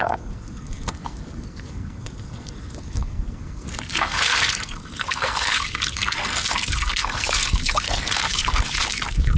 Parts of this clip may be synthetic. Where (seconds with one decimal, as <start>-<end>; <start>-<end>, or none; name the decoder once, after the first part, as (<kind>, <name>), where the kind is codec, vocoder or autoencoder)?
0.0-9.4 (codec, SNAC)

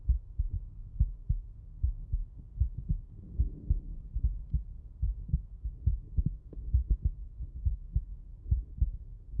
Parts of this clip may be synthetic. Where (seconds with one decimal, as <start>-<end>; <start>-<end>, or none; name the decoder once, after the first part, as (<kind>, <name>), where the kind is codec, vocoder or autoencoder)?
0.0-3.9 (codec, SNAC); 4.8-9.4

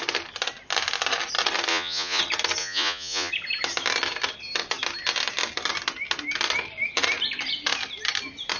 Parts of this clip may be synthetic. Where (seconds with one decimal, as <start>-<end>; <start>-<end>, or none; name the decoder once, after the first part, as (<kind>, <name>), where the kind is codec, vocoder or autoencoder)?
1.7-2.2 (vocoder, Vocos); 2.6-3.3